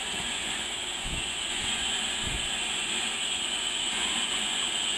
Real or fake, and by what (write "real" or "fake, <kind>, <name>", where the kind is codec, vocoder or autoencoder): fake, vocoder, Vocos